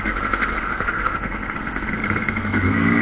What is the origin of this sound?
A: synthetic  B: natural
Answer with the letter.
A